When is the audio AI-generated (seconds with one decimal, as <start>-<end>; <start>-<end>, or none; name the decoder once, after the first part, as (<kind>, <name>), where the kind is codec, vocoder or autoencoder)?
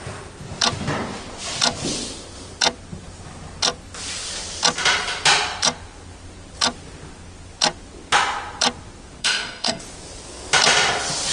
9.2-9.8 (codec, SNAC)